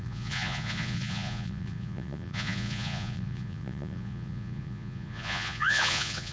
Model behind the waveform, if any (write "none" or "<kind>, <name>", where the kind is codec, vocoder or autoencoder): vocoder, Vocos